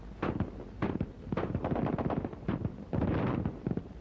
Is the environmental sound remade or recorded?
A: remade